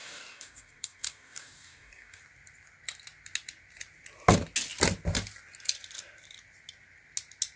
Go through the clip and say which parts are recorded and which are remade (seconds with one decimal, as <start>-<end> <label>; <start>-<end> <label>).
0.0-2.2 remade; 2.2-7.6 recorded